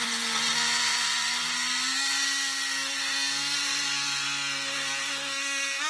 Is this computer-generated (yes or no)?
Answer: no